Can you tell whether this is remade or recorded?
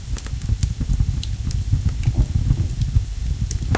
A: recorded